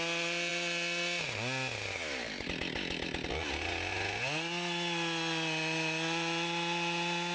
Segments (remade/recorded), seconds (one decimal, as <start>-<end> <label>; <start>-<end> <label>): 0.0-7.3 recorded